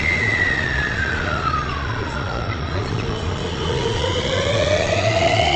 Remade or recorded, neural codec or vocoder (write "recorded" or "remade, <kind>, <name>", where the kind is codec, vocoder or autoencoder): remade, vocoder, Vocos